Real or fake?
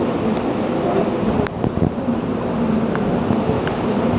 real